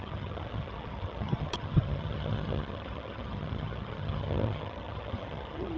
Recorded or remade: remade